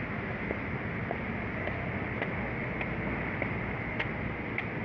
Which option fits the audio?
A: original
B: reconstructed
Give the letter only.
A